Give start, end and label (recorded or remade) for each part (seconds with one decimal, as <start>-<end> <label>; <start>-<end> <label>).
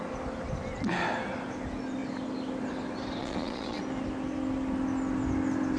0.0-3.2 recorded; 3.2-3.8 remade; 3.8-5.8 recorded